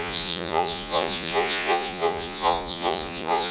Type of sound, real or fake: fake